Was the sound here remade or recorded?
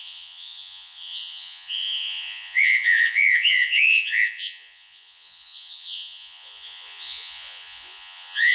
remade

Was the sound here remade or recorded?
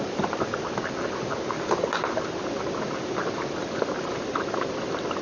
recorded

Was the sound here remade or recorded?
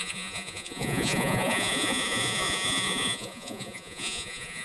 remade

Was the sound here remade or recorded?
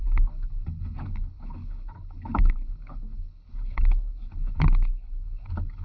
remade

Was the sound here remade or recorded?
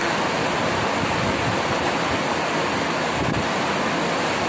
recorded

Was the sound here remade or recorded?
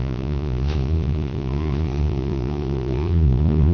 remade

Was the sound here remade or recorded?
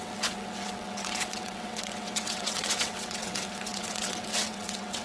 remade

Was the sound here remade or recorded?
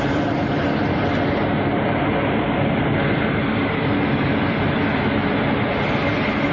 recorded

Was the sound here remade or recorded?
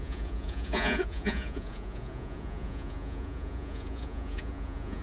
remade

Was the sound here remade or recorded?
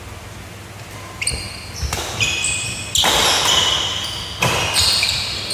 recorded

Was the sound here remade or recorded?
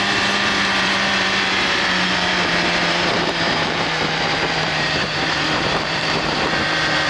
remade